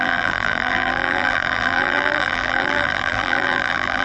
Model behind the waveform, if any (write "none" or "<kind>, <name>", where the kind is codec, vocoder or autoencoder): vocoder, BigVGAN v2